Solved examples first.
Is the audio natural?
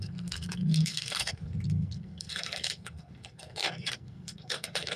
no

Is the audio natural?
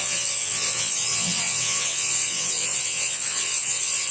no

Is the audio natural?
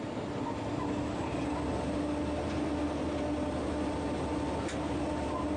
yes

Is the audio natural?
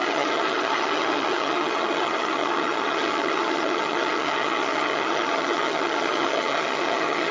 no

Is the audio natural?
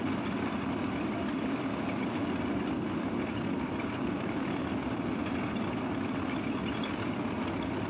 yes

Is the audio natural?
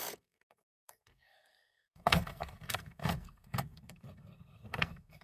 no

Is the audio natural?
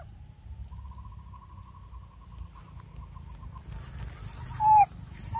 yes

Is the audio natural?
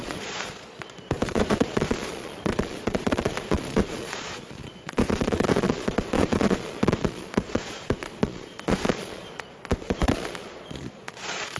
no